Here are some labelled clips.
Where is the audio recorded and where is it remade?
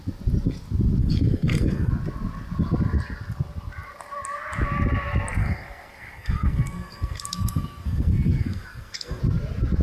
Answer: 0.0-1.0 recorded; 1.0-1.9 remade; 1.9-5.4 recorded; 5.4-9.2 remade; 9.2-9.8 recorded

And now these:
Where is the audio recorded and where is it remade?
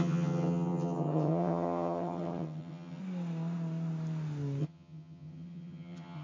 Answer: 0.0-3.0 remade; 3.0-4.6 recorded; 4.6-6.2 remade